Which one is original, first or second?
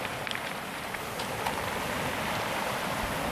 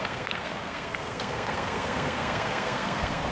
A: first